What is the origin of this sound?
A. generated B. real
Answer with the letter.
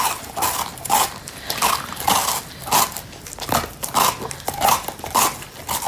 B